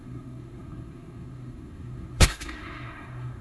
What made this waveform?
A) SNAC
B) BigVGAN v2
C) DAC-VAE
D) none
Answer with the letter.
A